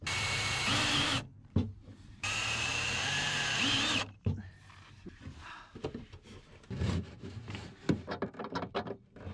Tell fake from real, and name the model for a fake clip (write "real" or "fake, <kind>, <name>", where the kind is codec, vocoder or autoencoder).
fake, vocoder, BigVGAN v2